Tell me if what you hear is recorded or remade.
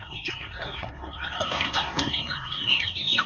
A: remade